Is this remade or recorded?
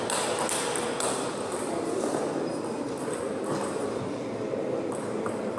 recorded